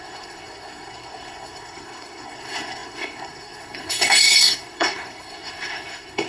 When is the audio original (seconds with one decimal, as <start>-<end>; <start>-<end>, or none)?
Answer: none